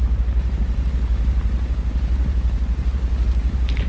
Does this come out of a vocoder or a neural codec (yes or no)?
yes